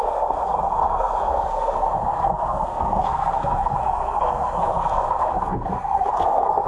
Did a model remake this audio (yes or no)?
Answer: yes